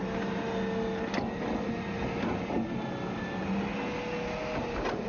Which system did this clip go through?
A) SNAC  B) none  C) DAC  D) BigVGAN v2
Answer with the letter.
B